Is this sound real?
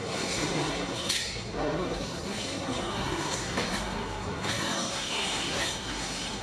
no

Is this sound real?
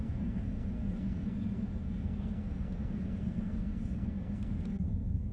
no